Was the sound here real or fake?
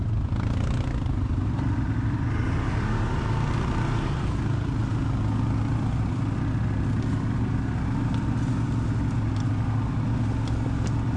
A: real